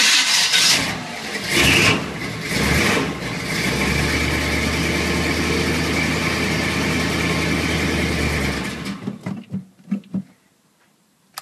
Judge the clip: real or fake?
real